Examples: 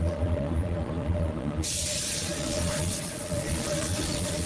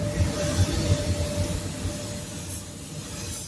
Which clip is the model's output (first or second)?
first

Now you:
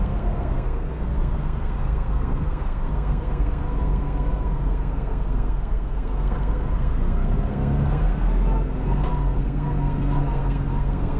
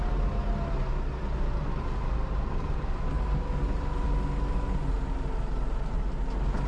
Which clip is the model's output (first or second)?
first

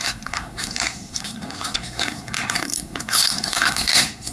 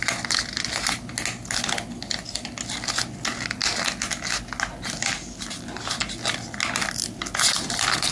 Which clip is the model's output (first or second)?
first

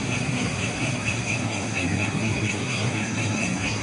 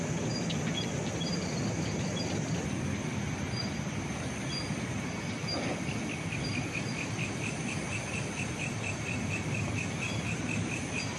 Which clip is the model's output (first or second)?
first